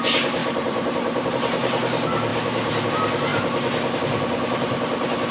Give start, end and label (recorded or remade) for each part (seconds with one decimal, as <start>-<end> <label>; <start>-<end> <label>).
0.0-0.4 recorded; 0.4-1.3 remade; 1.3-5.3 recorded